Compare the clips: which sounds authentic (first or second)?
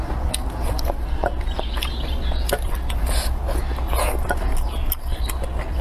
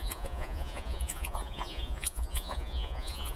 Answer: first